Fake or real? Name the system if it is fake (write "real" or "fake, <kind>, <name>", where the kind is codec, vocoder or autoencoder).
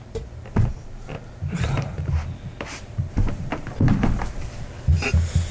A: fake, vocoder, BigVGAN v2